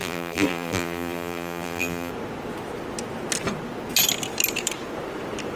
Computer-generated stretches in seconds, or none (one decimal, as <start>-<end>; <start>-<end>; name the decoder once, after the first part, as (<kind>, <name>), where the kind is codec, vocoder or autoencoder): 0.0-2.1 (vocoder, BigVGAN v2)